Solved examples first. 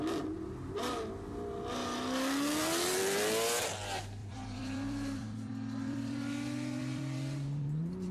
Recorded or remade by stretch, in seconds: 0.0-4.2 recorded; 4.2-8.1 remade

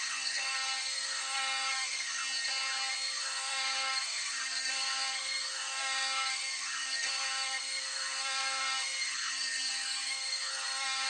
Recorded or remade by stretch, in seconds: 0.0-2.2 remade; 2.2-3.1 recorded; 3.1-11.1 remade

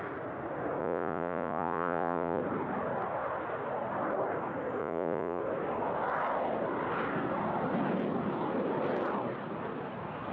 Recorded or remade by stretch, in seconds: 0.0-0.8 recorded; 0.8-2.4 remade; 2.4-4.8 recorded; 4.8-5.4 remade; 5.4-10.3 recorded

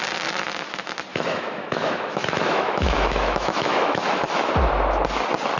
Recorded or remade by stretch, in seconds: 0.0-1.1 recorded; 1.1-4.5 remade; 4.5-5.6 recorded

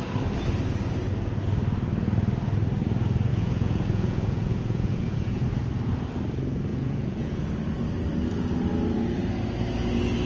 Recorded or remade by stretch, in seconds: 0.0-3.3 recorded; 3.3-5.4 remade; 5.4-6.7 recorded; 6.7-7.5 remade; 7.5-10.3 recorded

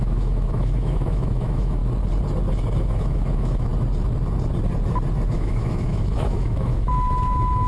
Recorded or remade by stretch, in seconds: 0.0-1.8 remade; 1.8-2.8 recorded; 2.8-3.7 remade; 3.7-5.3 recorded; 5.3-7.7 remade